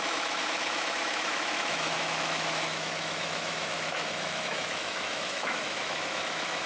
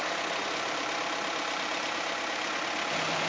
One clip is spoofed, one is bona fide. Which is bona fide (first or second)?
second